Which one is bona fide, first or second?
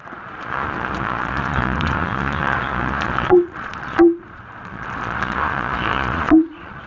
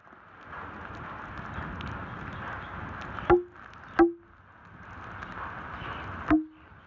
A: second